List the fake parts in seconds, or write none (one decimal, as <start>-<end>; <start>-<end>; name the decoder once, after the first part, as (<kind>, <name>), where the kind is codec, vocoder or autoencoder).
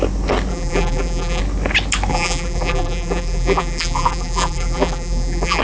0.5-1.4 (vocoder, BigVGAN v2); 2.1-5.6